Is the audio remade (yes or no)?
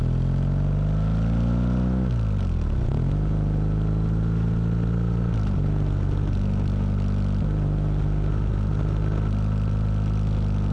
no